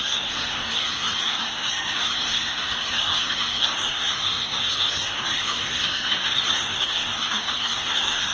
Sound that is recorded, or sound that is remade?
remade